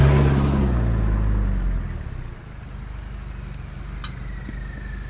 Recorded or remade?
recorded